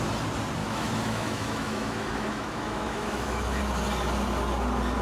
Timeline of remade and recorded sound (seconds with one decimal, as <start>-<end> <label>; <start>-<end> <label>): 0.0-0.6 recorded; 0.6-3.6 remade; 3.6-5.0 recorded